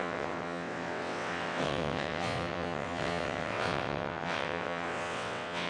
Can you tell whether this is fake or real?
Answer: fake